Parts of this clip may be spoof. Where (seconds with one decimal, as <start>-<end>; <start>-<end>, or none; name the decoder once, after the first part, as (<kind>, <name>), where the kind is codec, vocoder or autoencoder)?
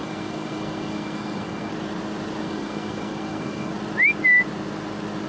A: 0.0-1.7 (codec, SNAC); 2.4-3.7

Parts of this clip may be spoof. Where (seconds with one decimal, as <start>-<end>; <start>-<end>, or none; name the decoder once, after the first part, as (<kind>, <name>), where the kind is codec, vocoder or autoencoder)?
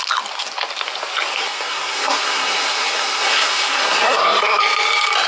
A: 1.4-4.6 (codec, SNAC)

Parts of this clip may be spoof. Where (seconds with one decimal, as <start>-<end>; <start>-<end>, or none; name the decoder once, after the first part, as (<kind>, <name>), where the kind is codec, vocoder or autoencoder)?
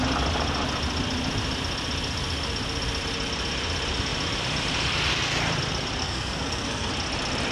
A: 6.0-6.9 (codec, SNAC)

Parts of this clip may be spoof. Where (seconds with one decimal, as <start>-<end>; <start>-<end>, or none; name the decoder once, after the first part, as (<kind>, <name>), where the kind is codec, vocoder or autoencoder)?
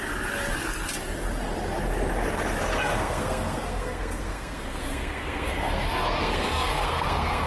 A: 2.7-7.5 (codec, SNAC)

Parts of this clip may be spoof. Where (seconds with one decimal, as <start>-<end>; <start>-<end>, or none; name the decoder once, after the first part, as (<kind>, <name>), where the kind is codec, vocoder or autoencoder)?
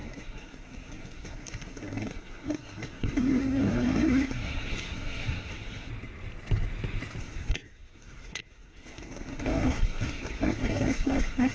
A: 0.0-5.9 (codec, SNAC); 7.2-11.5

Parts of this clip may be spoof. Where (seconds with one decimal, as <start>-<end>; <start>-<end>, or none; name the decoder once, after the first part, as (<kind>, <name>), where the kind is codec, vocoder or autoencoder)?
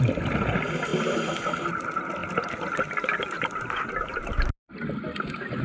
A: none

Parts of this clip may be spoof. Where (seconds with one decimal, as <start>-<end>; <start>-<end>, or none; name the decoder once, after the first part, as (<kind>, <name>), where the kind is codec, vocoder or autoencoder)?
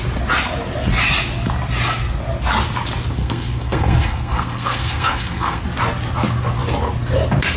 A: 3.2-5.6 (codec, SNAC)